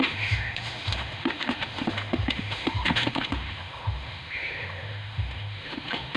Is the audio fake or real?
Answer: fake